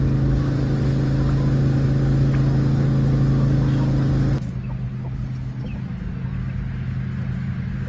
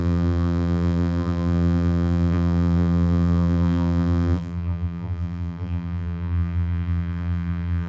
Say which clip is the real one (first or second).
first